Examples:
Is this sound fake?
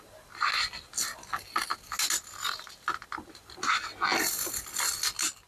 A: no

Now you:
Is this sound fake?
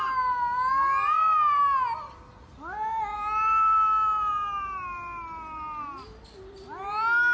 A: no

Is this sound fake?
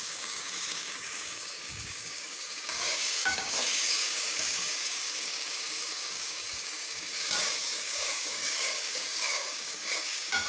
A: yes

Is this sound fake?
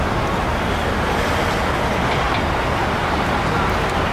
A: no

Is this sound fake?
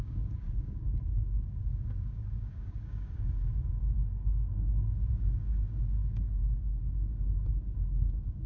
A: yes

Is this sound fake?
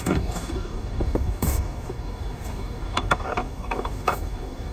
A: yes